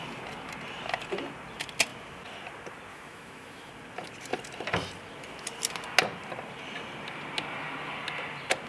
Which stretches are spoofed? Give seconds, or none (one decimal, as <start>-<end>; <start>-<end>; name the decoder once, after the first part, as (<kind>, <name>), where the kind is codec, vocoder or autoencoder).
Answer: 2.9-3.7 (autoencoder, DAC-VAE)